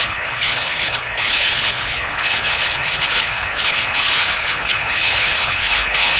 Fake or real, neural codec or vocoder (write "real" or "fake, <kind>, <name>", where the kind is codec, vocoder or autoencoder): fake, codec, HILCodec